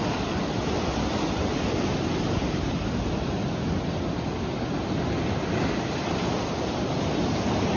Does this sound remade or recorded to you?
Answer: recorded